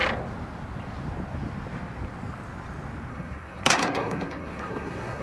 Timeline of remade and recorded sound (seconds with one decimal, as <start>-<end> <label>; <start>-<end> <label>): 0.0-3.1 recorded; 3.1-5.2 remade